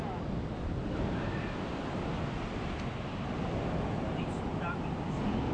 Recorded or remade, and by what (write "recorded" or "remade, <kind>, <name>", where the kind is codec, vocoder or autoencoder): recorded